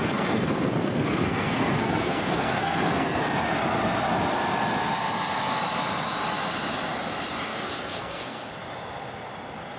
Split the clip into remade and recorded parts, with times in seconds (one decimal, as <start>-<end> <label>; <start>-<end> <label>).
0.0-3.2 remade; 3.2-7.5 recorded; 7.5-8.5 remade; 8.5-9.8 recorded